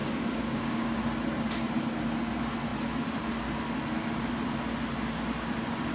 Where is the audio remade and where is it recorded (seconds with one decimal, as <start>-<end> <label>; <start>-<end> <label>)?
0.0-1.0 remade; 1.0-5.9 recorded